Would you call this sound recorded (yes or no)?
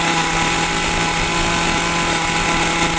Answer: yes